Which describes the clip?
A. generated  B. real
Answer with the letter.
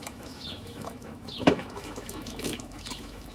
A